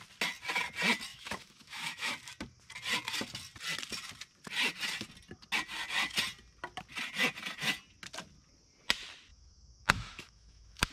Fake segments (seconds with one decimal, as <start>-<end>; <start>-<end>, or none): 1.1-2.1; 9.3-10.9